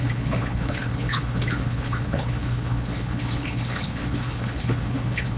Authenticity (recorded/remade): remade